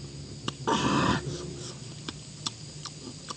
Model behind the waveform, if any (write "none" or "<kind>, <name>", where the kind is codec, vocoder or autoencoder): none